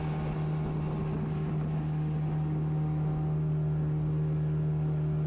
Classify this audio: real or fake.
real